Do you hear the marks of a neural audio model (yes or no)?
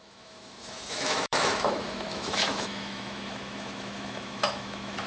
yes